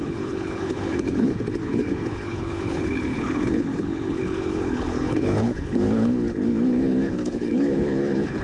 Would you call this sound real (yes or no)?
no